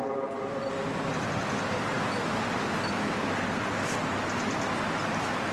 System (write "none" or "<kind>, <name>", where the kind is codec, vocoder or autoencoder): none